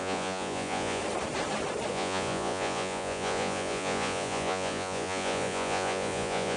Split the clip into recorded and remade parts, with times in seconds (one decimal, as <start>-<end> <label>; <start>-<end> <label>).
0.0-1.0 remade; 1.0-1.9 recorded; 1.9-6.6 remade